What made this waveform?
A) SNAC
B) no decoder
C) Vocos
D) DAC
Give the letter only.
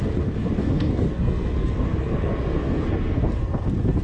A